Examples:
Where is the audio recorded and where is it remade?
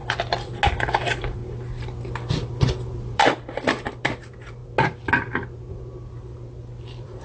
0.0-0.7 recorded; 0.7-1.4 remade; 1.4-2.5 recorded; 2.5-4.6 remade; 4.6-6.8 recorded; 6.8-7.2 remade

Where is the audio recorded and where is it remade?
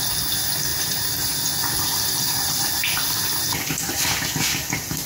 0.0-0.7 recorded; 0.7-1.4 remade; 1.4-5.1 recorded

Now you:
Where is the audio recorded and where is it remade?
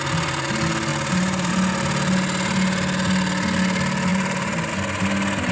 0.0-0.9 recorded; 0.9-1.5 remade; 1.5-4.1 recorded; 4.1-4.7 remade; 4.7-5.5 recorded